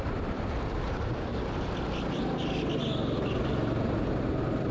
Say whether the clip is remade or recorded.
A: recorded